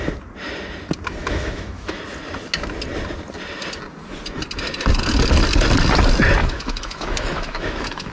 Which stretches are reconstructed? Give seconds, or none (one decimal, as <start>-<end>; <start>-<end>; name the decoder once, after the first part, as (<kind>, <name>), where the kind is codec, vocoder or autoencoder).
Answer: 1.2-2.0 (autoencoder, DAC-VAE); 6.4-8.1